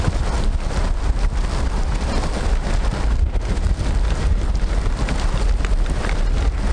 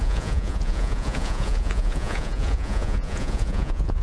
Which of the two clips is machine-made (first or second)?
second